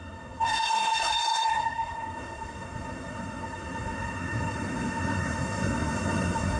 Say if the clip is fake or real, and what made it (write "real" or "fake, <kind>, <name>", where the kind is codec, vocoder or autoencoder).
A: fake, codec, SNAC